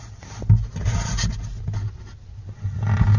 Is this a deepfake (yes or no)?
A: no